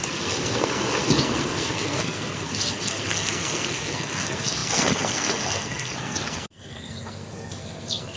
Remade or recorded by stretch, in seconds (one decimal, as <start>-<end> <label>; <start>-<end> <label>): 0.0-8.2 remade